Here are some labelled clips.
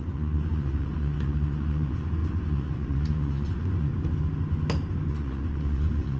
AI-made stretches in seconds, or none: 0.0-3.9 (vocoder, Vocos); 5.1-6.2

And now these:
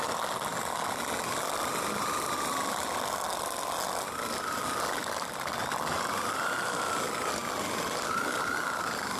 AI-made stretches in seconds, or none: none